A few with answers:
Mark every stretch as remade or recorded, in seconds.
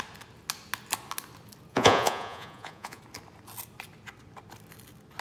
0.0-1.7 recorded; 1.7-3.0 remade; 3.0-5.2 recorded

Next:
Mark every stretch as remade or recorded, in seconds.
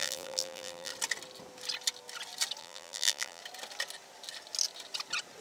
0.0-0.9 remade; 0.9-2.6 recorded; 2.6-3.4 remade; 3.4-5.4 recorded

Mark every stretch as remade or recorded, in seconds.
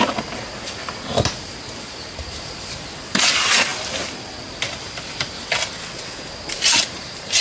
0.0-0.8 remade; 0.8-1.8 recorded; 1.8-3.7 remade; 3.7-6.8 recorded; 6.8-7.4 remade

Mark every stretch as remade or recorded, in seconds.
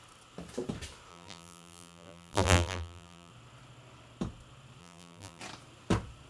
0.0-1.1 recorded; 1.1-3.3 remade; 3.3-4.8 recorded; 4.8-5.4 remade; 5.4-6.3 recorded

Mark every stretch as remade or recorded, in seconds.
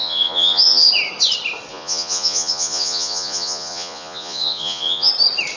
0.0-0.9 remade; 0.9-1.7 recorded; 1.7-5.1 remade; 5.1-5.6 recorded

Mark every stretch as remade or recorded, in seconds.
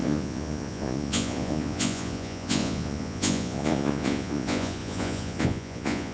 0.0-6.1 remade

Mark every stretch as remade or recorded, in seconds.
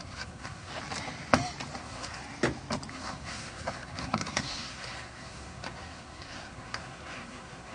0.0-0.7 remade; 0.7-1.8 recorded; 1.8-2.2 remade; 2.2-2.9 recorded; 2.9-7.7 remade